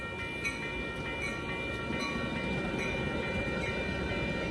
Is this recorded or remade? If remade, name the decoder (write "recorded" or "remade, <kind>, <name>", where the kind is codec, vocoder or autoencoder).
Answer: recorded